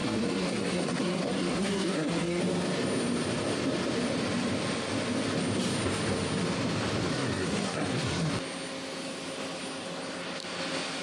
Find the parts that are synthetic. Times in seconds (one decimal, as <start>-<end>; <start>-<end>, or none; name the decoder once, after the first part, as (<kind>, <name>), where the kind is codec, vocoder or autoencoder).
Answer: 0.0-2.4 (codec, SNAC); 7.1-8.3